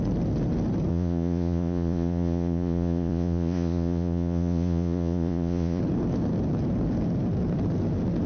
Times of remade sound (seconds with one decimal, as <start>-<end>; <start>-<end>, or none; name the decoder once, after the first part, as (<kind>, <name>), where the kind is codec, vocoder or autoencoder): 0.9-5.8 (vocoder, Vocos)